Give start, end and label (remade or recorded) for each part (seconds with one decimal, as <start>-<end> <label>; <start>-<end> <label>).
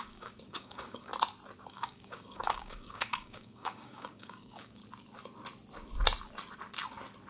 0.0-1.1 remade; 1.1-1.7 recorded; 1.7-4.8 remade; 4.8-7.3 recorded